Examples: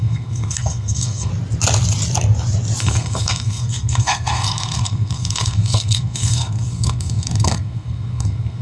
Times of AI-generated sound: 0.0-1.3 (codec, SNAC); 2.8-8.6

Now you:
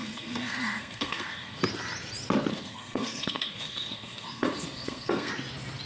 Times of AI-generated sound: 0.0-1.6 (codec, SNAC); 2.5-5.3

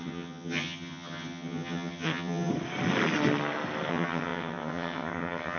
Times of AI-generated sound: 0.0-2.5 (vocoder, HiFi-GAN); 3.9-5.6

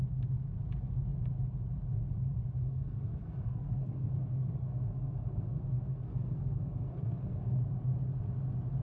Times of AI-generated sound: 2.6-7.6 (codec, SNAC)

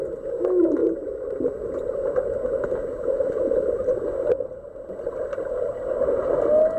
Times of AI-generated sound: none